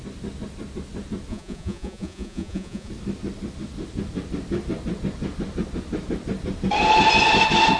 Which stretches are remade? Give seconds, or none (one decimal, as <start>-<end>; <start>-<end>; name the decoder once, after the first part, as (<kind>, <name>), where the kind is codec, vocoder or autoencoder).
1.3-2.9 (vocoder, Vocos)